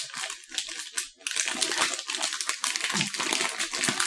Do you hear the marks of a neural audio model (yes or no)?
no